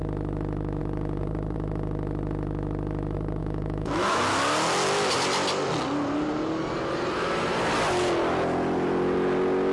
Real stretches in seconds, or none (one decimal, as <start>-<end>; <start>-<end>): 0.0-3.4; 4.2-9.7